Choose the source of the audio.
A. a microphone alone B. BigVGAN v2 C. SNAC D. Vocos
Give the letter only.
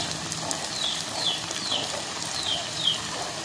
B